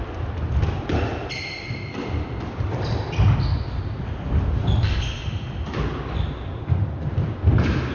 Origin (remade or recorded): recorded